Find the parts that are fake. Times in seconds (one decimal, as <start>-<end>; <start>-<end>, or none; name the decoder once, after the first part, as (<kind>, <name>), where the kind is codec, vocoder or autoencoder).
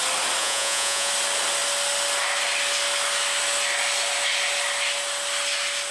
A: 0.4-1.1 (vocoder, Vocos)